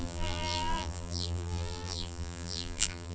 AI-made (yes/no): yes